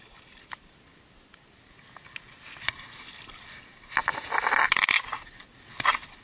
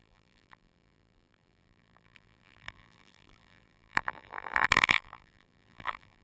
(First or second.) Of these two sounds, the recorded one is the first